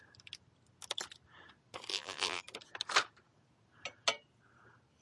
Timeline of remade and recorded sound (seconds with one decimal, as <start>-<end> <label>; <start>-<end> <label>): 0.0-1.9 recorded; 1.9-2.4 remade; 2.4-5.0 recorded